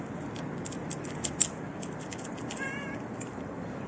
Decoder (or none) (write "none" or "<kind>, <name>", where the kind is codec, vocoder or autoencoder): none